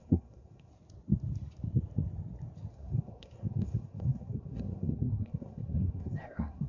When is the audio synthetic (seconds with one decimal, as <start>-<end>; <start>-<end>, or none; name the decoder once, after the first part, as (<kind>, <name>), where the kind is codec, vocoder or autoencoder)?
0.0-0.7 (codec, SNAC); 2.7-6.7